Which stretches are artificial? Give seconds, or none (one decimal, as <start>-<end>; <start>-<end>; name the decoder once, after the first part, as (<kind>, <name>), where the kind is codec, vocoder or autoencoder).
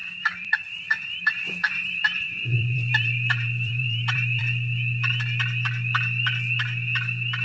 0.0-4.4 (vocoder, BigVGAN v2)